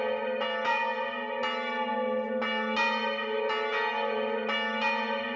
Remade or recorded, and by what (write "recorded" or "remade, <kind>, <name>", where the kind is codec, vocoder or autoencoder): recorded